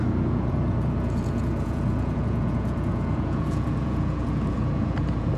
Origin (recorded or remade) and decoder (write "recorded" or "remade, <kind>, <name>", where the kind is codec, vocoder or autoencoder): remade, vocoder, Vocos